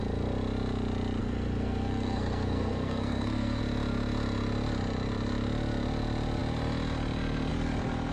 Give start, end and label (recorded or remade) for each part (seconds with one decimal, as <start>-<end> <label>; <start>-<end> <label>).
0.0-1.2 recorded; 1.2-3.6 remade; 3.6-8.1 recorded